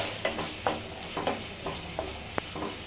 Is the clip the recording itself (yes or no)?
yes